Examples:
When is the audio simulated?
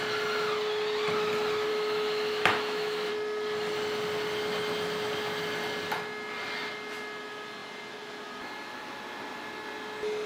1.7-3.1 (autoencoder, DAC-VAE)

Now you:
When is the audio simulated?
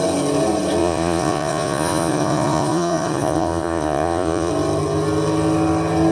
0.8-4.5 (vocoder, Vocos)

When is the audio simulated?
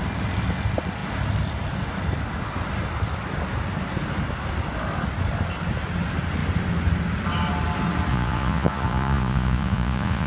8.1-10.3 (vocoder, Vocos)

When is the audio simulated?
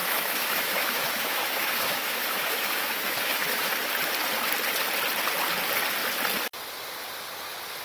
0.0-3.7 (autoencoder, DAC-VAE)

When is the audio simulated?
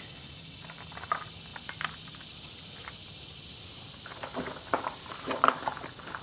none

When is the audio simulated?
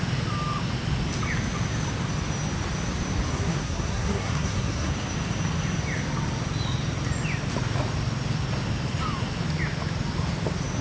3.3-4.9 (codec, SNAC)